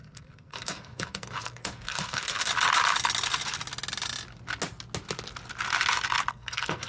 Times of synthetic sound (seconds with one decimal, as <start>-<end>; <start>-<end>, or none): 0.0-2.5; 6.3-6.9